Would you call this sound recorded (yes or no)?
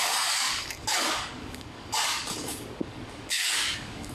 no